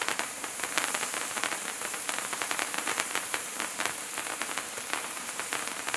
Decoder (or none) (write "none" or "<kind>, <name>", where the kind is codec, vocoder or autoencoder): vocoder, BigVGAN v2